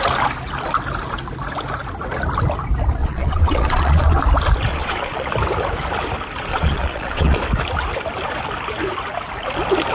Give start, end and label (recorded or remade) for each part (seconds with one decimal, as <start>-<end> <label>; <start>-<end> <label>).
0.0-3.0 recorded; 3.0-4.2 remade; 4.2-4.7 recorded; 4.7-5.3 remade; 5.3-6.5 recorded; 6.5-7.4 remade; 7.4-9.9 recorded